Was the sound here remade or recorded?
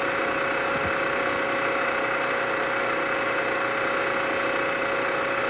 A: recorded